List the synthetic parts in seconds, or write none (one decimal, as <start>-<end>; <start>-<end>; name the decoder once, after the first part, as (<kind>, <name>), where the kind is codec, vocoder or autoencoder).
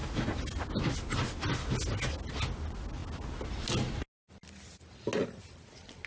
none